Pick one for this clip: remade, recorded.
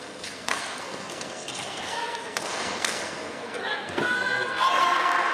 remade